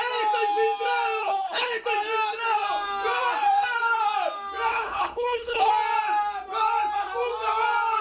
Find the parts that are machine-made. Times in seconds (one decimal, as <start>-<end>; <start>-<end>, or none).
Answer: 1.2-1.7; 4.7-5.7